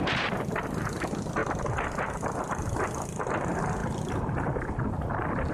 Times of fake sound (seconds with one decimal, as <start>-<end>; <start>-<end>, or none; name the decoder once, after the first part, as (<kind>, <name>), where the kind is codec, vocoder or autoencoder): 0.0-1.4 (vocoder, BigVGAN v2); 2.4-5.5

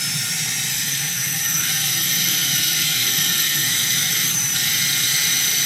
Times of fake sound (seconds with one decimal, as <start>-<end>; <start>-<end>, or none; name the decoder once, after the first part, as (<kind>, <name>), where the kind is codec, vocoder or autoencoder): 0.7-4.1 (codec, SNAC)